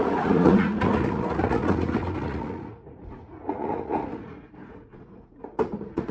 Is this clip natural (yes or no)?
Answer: no